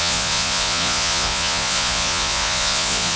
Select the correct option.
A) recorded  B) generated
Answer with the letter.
B